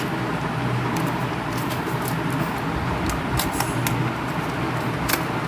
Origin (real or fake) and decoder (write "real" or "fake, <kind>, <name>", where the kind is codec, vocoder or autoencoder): real